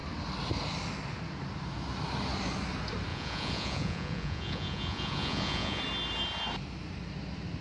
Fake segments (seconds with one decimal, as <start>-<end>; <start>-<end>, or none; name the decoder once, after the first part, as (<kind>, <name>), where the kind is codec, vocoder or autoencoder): 3.1-5.8 (vocoder, Vocos)